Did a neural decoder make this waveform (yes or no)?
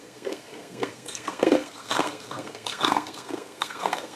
yes